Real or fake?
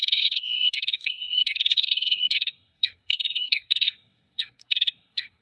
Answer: fake